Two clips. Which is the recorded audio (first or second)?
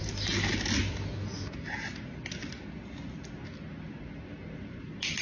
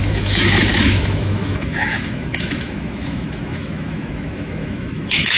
first